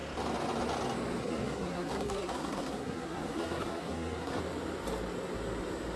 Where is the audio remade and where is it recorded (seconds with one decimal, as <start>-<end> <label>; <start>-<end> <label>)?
0.0-1.2 recorded; 1.2-4.4 remade; 4.4-6.0 recorded